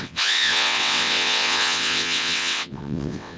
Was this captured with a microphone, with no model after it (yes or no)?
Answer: no